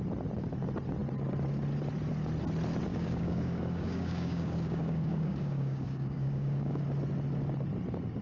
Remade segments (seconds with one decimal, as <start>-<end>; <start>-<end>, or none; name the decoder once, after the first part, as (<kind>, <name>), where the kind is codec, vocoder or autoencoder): 2.9-6.8 (codec, DAC)